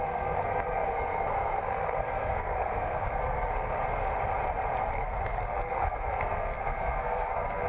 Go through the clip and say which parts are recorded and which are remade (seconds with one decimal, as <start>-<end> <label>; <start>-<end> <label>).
0.0-3.8 remade; 3.8-4.9 recorded; 4.9-7.7 remade